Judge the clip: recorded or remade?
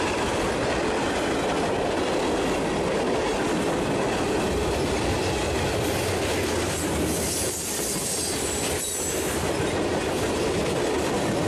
recorded